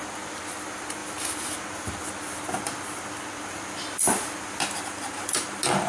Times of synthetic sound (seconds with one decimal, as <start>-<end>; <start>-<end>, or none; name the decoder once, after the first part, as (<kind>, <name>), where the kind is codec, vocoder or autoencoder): none